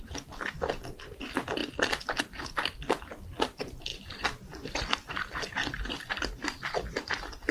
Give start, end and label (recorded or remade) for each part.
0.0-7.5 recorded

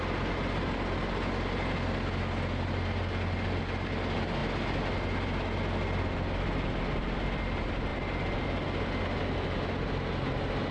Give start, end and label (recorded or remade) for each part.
0.0-10.7 recorded

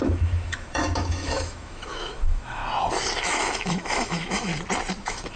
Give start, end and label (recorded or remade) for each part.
0.0-2.6 remade; 2.6-3.2 recorded; 3.2-4.5 remade; 4.5-5.0 recorded; 5.0-5.4 remade

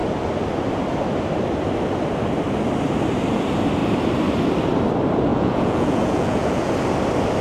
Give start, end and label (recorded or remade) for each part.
0.0-5.3 recorded; 5.3-6.7 remade; 6.7-7.4 recorded

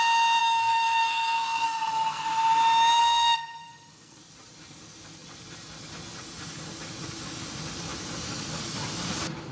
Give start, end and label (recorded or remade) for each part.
0.0-0.4 recorded; 0.4-2.2 remade; 2.2-3.0 recorded; 3.0-4.2 remade; 4.2-9.5 recorded